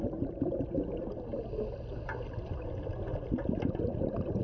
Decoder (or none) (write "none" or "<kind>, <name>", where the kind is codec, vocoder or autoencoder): none